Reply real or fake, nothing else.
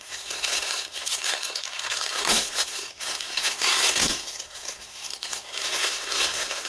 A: fake